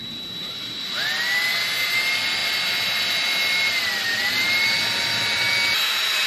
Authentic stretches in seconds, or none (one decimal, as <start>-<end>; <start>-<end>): 0.0-6.3